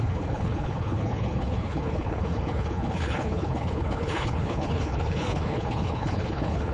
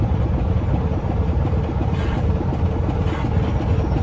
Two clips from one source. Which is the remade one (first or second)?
first